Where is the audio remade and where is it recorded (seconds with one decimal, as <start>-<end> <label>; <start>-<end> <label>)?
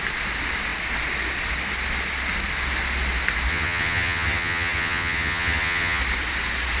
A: 0.0-3.5 recorded; 3.5-6.0 remade; 6.0-6.8 recorded